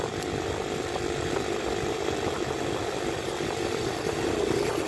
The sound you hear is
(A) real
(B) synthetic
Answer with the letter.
A